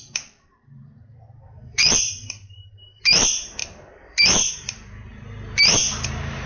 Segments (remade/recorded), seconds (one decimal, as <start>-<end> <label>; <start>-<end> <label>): 0.0-6.5 remade